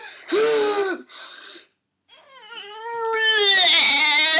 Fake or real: real